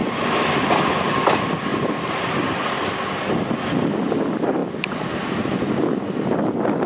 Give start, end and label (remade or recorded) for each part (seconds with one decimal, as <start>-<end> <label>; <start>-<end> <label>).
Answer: 0.0-6.9 recorded